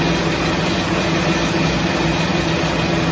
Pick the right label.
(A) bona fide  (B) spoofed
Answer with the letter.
A